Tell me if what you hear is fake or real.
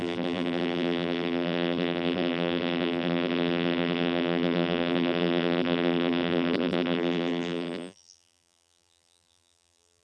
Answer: fake